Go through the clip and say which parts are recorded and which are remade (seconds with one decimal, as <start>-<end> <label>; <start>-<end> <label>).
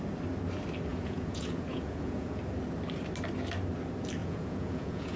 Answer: 0.0-0.9 recorded; 0.9-2.4 remade; 2.4-4.2 recorded; 4.2-5.2 remade